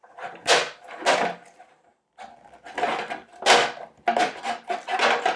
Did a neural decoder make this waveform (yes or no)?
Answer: no